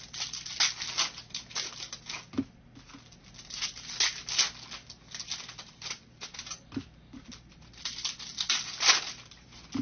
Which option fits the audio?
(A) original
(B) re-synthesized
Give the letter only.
A